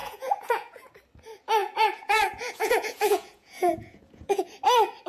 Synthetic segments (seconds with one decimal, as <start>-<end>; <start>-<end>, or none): 0.0-0.9; 1.6-4.5

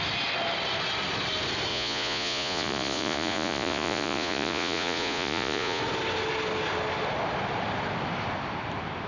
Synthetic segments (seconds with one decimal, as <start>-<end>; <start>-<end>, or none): 1.7-5.8

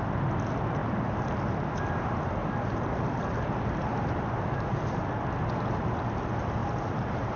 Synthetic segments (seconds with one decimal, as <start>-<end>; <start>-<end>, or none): 0.8-1.4; 2.4-5.1; 6.6-7.4

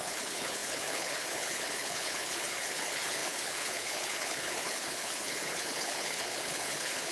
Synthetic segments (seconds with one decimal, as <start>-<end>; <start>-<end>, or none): 0.0-7.1

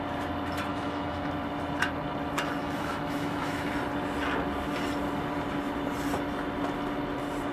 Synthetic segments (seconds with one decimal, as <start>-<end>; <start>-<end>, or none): 0.7-1.3; 2.6-3.7

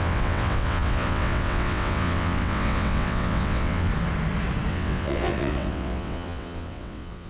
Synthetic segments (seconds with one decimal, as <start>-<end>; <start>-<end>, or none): 0.0-3.9; 4.7-7.3